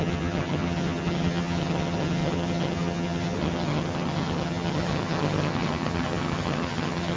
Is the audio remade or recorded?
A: remade